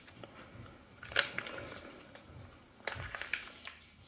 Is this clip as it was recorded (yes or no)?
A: yes